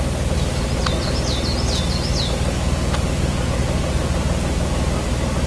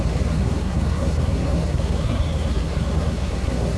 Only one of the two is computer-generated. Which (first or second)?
second